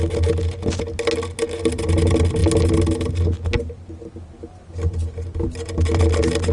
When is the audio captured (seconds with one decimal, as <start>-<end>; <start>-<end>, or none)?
0.0-6.5